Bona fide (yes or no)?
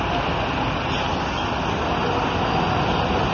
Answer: yes